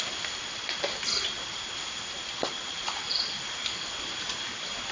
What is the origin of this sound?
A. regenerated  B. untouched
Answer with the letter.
A